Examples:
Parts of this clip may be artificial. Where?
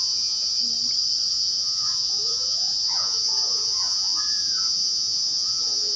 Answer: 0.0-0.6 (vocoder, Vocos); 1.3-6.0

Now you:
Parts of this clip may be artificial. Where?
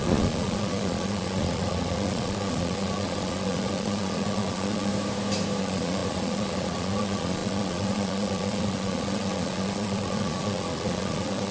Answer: 0.0-4.9 (vocoder, Vocos); 5.6-11.5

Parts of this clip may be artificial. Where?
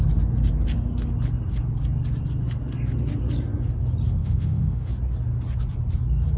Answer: 4.2-4.9 (autoencoder, DAC-VAE)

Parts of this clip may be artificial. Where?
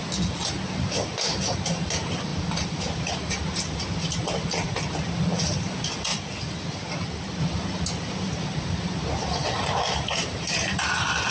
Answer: 2.3-4.8 (vocoder, BigVGAN v2); 6.1-7.4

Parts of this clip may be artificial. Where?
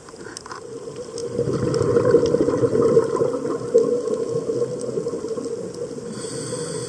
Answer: none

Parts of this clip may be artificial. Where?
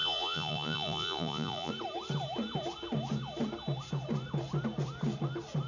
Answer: 0.0-1.7 (vocoder, Vocos)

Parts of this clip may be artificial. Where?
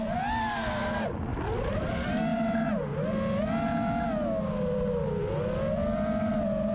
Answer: none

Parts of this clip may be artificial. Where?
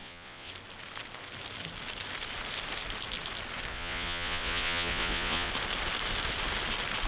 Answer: 0.0-0.5 (vocoder, Vocos); 3.7-5.5